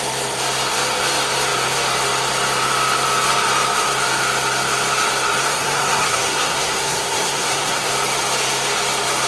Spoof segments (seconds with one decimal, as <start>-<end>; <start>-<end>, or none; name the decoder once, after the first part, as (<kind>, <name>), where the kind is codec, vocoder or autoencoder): 5.5-7.9 (codec, SNAC)